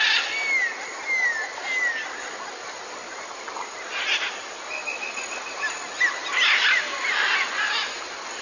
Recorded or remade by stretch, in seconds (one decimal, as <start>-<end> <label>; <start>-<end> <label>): 0.0-8.4 recorded